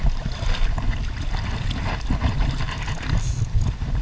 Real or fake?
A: fake